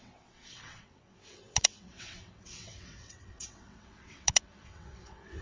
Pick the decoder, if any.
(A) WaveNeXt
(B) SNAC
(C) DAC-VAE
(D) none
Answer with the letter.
A